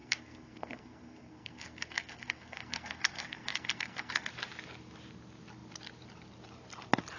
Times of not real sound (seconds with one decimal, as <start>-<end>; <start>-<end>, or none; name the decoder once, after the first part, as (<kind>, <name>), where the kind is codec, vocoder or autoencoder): 0.0-4.3 (codec, SNAC)